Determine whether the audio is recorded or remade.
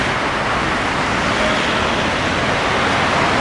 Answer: recorded